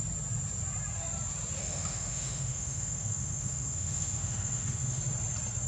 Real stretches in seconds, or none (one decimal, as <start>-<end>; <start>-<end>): 0.0-1.6; 5.0-5.7